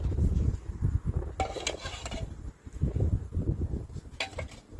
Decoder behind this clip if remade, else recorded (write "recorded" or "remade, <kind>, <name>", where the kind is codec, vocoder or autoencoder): recorded